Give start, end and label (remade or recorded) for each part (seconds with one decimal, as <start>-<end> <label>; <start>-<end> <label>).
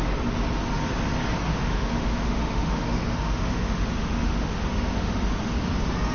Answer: 0.0-1.5 recorded; 1.5-5.2 remade; 5.2-6.1 recorded